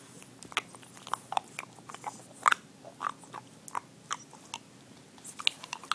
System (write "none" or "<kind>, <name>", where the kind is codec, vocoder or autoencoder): none